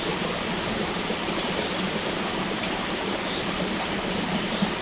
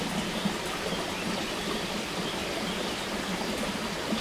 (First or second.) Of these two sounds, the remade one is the first